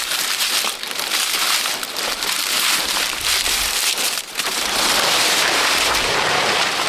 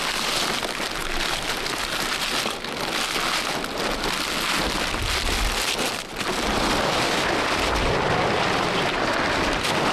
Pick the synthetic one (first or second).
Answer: first